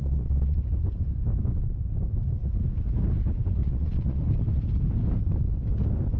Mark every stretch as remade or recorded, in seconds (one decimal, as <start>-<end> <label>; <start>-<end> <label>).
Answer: 0.0-0.6 remade; 0.6-3.6 recorded; 3.6-4.2 remade; 4.2-6.2 recorded